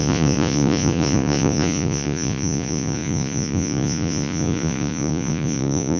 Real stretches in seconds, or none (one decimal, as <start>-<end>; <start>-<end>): none